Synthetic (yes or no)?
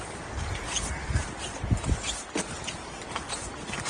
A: yes